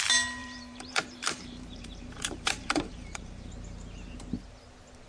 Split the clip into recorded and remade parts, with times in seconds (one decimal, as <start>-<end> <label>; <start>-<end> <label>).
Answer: 0.0-0.4 recorded; 0.4-3.5 remade; 3.5-5.1 recorded